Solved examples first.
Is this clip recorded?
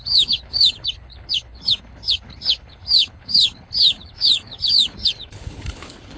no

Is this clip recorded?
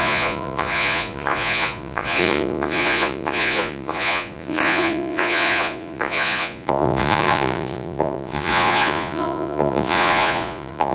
no